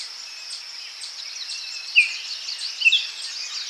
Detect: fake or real real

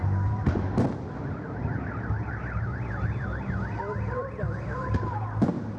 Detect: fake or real real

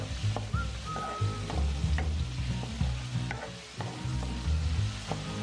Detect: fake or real real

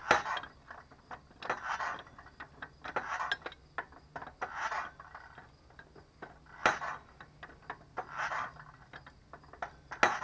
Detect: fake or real real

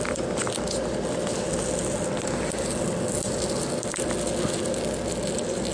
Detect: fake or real real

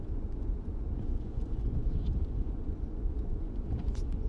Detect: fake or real fake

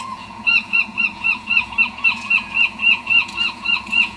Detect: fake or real fake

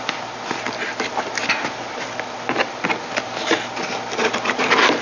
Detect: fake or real real